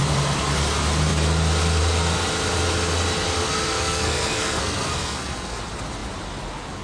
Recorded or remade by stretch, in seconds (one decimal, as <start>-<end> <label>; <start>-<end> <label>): 0.0-3.4 recorded; 3.4-5.6 remade; 5.6-6.8 recorded